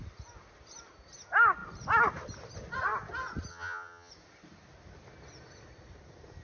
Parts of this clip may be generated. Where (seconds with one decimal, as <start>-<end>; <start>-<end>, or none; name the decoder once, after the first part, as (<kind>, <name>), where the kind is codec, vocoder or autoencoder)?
3.5-4.1 (vocoder, HiFi-GAN)